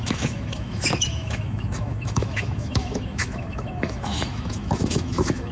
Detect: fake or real fake